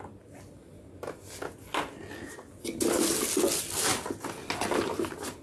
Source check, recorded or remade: recorded